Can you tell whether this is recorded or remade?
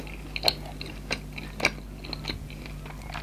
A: recorded